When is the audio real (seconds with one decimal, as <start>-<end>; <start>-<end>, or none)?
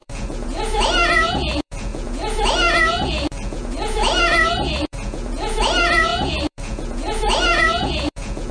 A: none